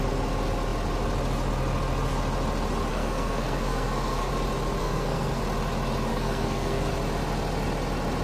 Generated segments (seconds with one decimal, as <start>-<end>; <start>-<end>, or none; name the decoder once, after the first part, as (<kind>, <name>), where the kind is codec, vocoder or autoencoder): 2.9-4.3 (codec, SNAC); 4.8-5.4; 6.1-6.9